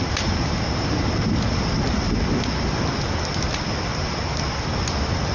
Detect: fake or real real